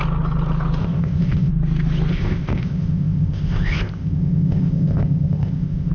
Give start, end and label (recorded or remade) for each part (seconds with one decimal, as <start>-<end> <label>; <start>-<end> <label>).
0.0-0.8 recorded; 0.8-1.5 remade; 1.5-2.1 recorded; 2.1-5.9 remade